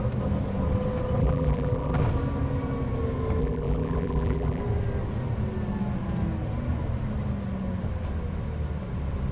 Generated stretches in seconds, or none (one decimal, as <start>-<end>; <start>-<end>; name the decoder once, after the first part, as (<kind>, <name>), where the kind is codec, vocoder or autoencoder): 1.2-2.0 (vocoder, BigVGAN v2); 3.4-4.6